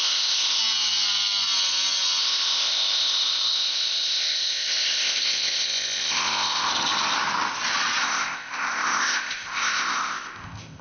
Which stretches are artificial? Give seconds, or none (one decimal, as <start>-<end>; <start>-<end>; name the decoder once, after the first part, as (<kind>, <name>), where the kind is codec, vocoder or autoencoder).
0.0-0.6 (codec, ZipCodec); 2.2-6.7; 8.0-10.8